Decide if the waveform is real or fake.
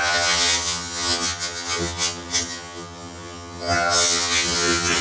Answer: fake